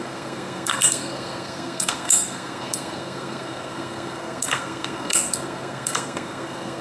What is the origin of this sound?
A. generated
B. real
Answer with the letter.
A